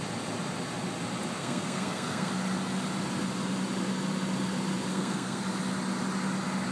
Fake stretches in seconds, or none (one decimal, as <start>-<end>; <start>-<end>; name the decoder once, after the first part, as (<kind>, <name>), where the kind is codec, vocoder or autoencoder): 1.4-2.3 (codec, SNAC); 4.9-5.4